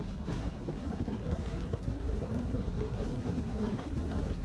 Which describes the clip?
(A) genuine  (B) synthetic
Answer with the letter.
B